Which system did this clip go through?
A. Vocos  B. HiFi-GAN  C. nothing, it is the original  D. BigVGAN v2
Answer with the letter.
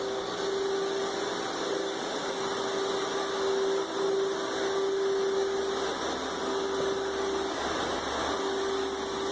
C